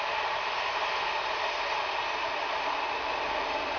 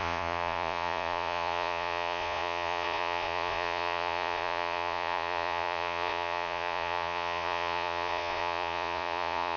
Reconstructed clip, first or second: second